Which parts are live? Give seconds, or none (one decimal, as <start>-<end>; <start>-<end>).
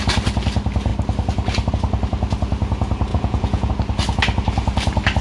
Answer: 0.0-3.1; 3.7-5.2